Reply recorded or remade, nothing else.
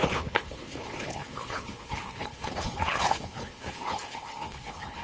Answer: remade